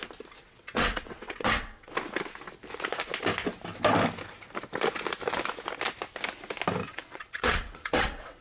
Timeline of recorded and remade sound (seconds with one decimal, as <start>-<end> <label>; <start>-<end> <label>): 0.0-0.4 recorded; 0.4-1.9 remade; 1.9-6.8 recorded; 6.8-8.4 remade